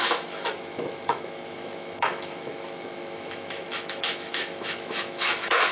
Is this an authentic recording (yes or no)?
no